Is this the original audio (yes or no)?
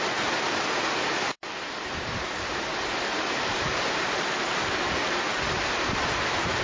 no